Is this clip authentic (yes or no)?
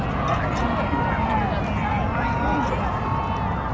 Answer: yes